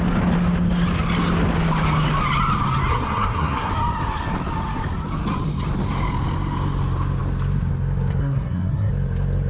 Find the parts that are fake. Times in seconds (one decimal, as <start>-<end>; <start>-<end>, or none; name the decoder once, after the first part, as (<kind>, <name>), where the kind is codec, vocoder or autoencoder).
2.9-3.7 (codec, SNAC); 8.2-8.9

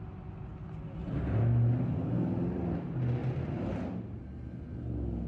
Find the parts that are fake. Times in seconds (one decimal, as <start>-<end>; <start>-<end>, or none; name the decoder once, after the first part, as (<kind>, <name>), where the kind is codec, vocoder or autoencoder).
none